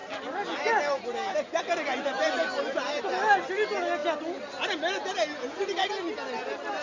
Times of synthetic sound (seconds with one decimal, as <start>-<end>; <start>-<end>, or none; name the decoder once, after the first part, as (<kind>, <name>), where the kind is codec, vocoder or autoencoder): none